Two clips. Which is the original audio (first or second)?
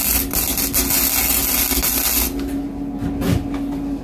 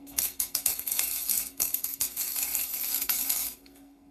first